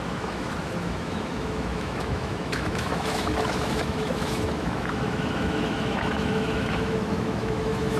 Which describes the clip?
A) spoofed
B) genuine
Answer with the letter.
A